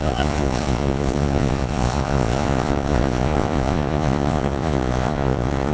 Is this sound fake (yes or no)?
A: yes